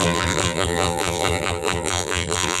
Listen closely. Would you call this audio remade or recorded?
remade